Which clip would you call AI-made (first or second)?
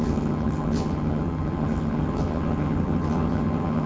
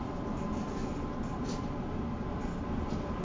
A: first